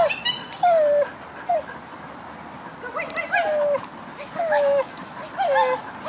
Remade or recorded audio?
recorded